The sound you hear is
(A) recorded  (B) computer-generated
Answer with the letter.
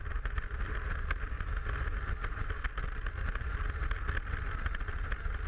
A